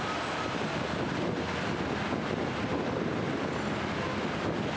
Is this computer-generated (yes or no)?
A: no